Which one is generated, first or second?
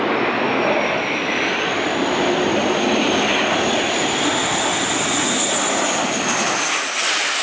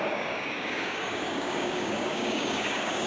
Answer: second